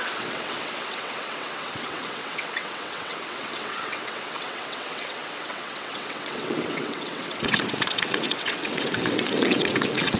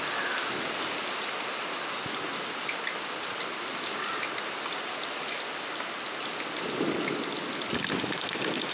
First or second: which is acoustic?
second